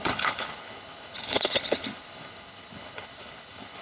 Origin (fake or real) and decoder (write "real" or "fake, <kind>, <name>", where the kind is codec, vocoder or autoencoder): fake, codec, HILCodec